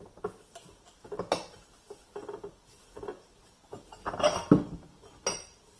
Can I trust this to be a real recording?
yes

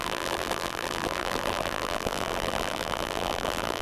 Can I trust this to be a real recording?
no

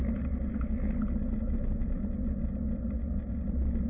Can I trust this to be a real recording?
yes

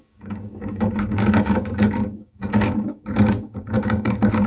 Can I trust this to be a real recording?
no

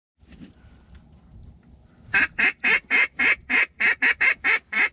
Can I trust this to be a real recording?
yes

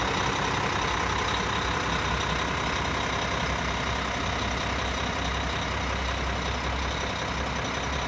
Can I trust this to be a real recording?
yes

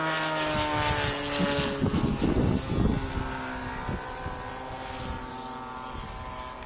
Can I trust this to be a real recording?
yes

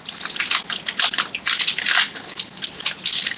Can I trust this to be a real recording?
yes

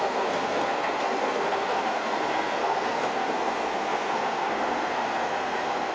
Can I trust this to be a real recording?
no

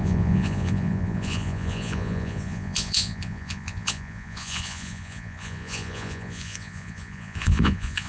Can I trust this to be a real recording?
no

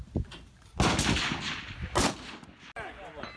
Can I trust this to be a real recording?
yes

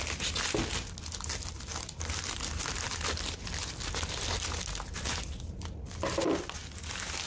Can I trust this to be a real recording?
yes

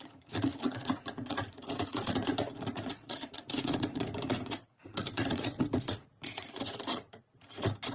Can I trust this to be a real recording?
no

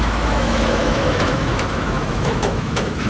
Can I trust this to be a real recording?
no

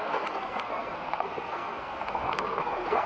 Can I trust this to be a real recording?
no